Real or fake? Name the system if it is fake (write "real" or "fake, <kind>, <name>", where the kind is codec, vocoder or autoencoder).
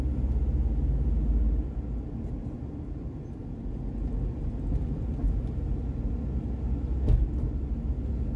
real